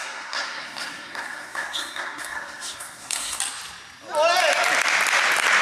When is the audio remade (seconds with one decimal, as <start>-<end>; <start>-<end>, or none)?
0.0-3.4